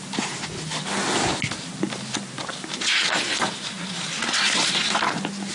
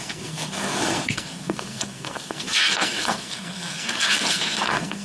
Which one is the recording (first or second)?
first